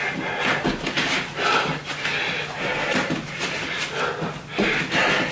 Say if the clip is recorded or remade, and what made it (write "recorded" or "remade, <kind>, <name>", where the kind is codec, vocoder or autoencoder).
recorded